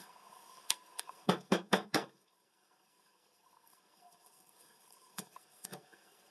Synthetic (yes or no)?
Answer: yes